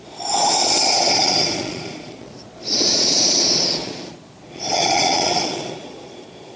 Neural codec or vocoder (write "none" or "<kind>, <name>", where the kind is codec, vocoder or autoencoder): vocoder, Vocos